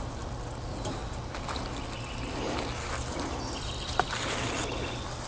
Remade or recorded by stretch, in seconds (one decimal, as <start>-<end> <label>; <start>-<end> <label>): 0.0-5.3 recorded